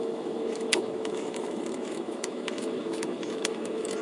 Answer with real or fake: fake